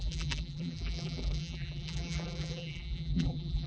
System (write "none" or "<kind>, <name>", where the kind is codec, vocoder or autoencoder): vocoder, BigVGAN v2